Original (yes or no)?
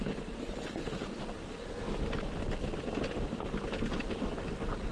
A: yes